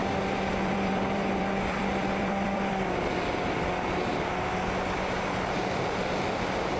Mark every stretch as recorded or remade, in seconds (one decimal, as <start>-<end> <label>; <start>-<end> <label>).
0.0-4.1 remade; 4.1-6.8 recorded